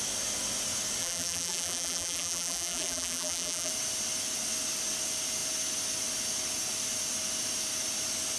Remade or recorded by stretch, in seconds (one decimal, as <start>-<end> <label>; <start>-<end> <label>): 0.0-1.0 recorded; 1.0-3.7 remade; 3.7-8.4 recorded